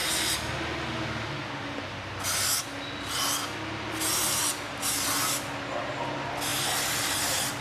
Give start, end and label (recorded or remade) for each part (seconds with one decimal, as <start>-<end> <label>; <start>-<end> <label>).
0.0-7.6 recorded

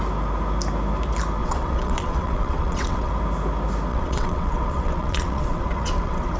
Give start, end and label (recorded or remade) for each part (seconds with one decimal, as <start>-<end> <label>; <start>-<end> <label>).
0.0-1.4 recorded; 1.4-3.1 remade; 3.1-3.9 recorded; 3.9-6.4 remade

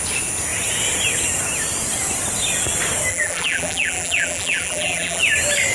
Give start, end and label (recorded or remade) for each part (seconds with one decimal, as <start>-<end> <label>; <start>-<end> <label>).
0.0-3.1 recorded; 3.1-5.2 remade; 5.2-5.7 recorded